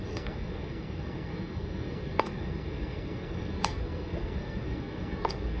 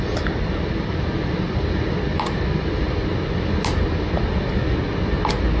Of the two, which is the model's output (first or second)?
first